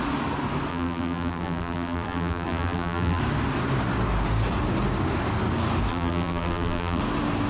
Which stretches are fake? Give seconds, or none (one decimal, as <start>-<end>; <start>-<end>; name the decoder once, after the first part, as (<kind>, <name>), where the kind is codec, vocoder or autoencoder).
0.7-3.2 (vocoder, BigVGAN v2); 5.9-7.0